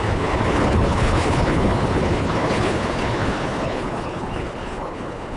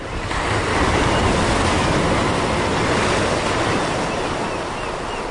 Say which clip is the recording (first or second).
second